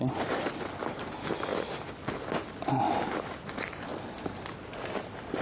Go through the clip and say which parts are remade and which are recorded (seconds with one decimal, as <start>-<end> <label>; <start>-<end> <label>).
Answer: 0.0-5.4 recorded